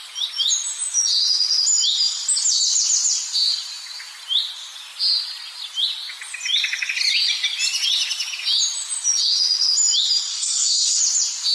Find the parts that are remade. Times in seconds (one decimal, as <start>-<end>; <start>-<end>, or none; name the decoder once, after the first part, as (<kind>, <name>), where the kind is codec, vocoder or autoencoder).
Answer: 10.3-11.0 (codec, SNAC)